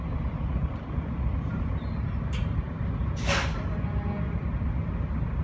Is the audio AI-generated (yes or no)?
no